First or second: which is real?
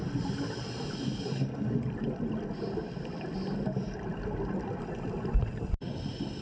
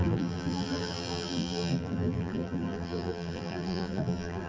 first